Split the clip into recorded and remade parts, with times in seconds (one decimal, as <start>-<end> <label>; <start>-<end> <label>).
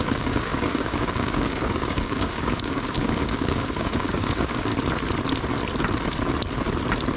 0.0-4.7 remade; 4.7-7.2 recorded